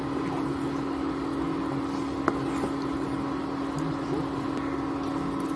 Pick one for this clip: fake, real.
real